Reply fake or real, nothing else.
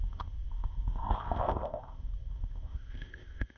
fake